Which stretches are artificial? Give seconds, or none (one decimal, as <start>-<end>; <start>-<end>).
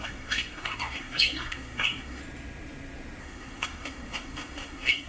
0.0-2.2; 3.2-5.1